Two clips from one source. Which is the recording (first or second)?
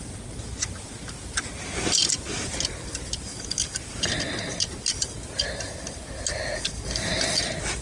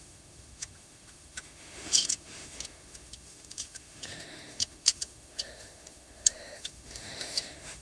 first